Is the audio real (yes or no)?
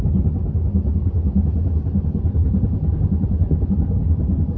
yes